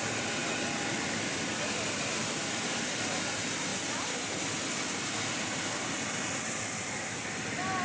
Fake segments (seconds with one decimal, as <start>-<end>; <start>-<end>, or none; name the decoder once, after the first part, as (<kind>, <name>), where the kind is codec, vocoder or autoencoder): 0.4-3.2 (vocoder, BigVGAN v2)